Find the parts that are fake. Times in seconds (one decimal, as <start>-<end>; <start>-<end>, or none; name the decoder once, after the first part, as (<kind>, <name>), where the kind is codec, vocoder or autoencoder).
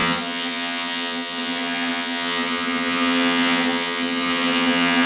0.0-5.1 (vocoder, HiFi-GAN)